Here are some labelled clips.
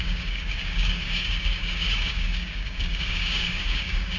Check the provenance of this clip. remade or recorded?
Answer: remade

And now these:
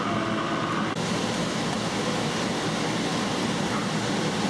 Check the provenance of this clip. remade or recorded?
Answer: remade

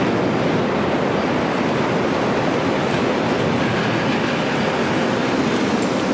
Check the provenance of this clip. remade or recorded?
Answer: recorded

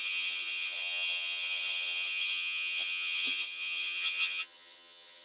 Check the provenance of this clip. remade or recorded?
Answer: remade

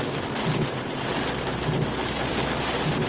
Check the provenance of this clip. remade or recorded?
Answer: recorded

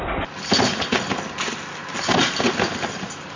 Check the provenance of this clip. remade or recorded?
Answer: recorded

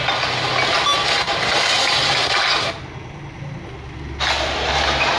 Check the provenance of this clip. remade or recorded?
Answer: recorded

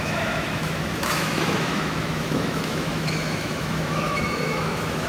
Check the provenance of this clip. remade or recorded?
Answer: remade